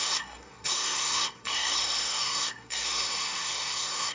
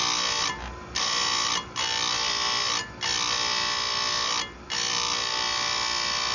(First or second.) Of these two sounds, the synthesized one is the first